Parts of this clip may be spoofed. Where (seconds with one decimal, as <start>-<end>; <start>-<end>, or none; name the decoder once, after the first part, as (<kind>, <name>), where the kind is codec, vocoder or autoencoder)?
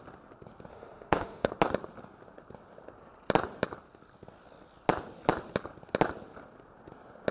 0.7-1.5 (autoencoder, DAC-VAE)